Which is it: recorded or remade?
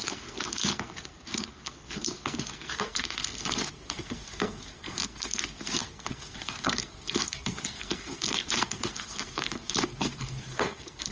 remade